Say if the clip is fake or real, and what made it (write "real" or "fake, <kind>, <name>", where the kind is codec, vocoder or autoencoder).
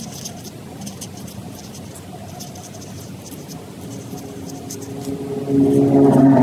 real